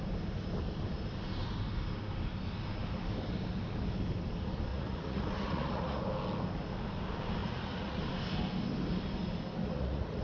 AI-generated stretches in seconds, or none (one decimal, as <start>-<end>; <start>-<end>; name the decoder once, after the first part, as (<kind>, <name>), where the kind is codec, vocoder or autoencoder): 4.7-6.0 (vocoder, Vocos); 7.4-8.0; 9.6-10.2